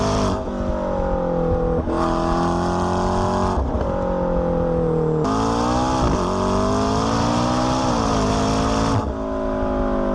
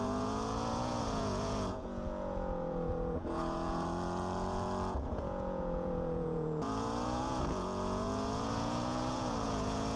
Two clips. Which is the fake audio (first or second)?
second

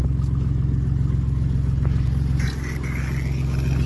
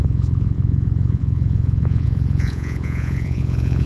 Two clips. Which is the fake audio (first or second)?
second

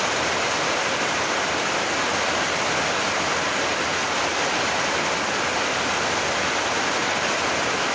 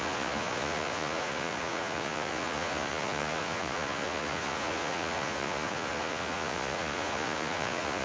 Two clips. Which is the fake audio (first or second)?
second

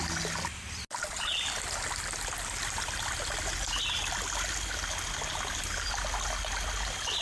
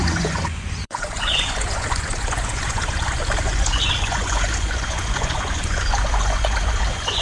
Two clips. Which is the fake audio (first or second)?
second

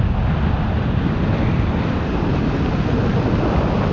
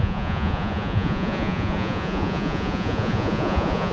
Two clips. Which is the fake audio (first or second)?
second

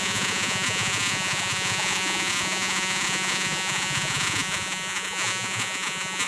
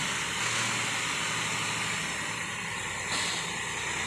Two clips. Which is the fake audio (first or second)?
first